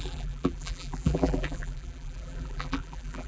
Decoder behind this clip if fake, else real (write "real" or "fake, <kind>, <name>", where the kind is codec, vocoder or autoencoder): fake, vocoder, BigVGAN v2